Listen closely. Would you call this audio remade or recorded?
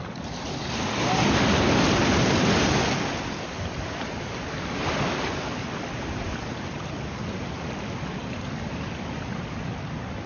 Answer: remade